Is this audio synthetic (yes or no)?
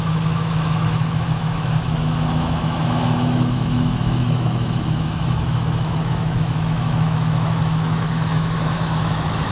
yes